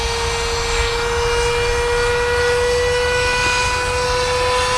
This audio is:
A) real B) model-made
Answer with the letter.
A